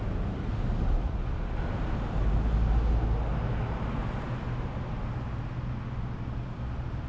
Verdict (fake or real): real